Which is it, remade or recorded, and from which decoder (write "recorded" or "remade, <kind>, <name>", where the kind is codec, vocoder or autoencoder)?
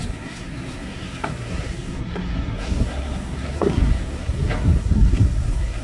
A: remade, codec, SNAC